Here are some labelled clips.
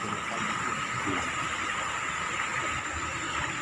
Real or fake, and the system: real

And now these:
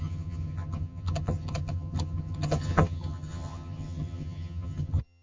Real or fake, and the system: fake, vocoder, HiFi-GAN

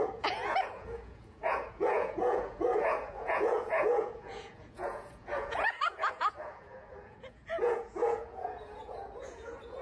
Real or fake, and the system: fake, vocoder, Vocos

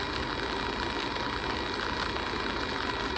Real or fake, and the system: real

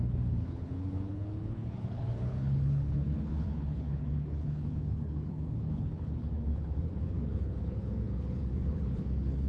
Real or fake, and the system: fake, codec, HILCodec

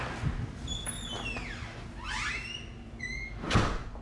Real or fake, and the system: real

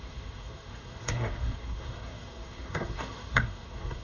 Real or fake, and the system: fake, codec, SNAC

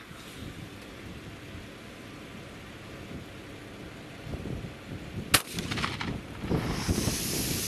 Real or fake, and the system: real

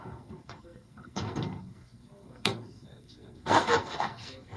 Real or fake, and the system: fake, codec, SNAC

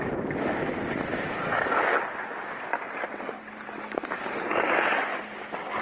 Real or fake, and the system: real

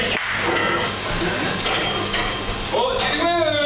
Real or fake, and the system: real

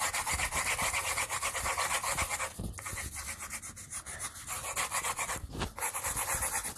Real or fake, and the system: real